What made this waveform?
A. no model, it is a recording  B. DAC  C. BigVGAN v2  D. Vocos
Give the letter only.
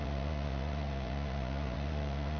D